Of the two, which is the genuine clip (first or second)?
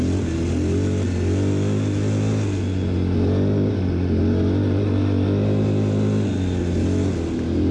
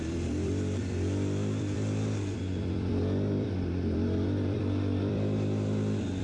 first